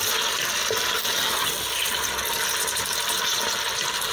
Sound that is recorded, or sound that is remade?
recorded